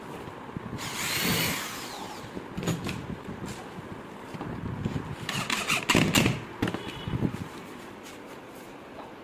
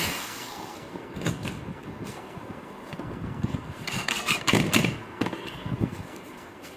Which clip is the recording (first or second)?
first